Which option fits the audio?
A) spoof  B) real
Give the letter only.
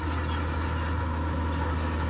B